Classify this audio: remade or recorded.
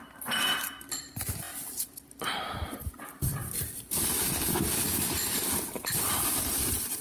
remade